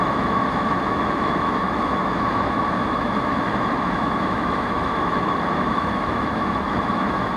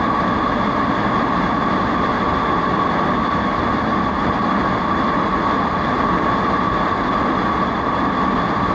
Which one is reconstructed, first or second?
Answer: first